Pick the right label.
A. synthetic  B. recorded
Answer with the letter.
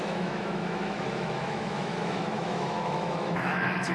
A